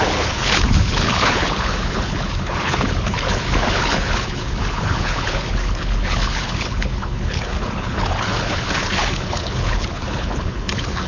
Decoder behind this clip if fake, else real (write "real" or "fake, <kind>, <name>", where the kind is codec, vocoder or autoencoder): fake, codec, HILCodec